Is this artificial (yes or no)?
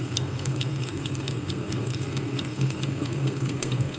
yes